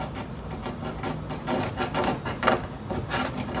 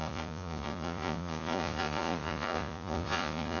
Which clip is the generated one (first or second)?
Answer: second